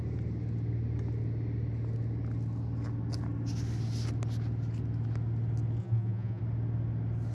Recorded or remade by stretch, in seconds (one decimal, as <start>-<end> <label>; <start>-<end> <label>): 0.0-5.8 recorded; 5.8-6.4 remade; 6.4-7.3 recorded